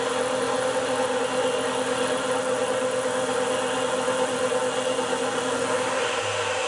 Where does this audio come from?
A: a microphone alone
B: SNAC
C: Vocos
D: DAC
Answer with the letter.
A